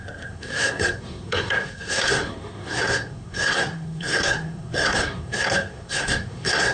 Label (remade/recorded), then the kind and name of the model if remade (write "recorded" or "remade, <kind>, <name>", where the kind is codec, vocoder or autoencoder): remade, codec, SNAC